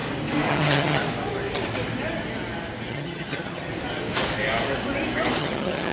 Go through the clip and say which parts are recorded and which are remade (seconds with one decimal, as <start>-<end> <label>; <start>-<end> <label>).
0.0-0.5 recorded; 0.5-1.0 remade; 1.0-2.9 recorded; 2.9-3.7 remade; 3.7-5.4 recorded; 5.4-5.9 remade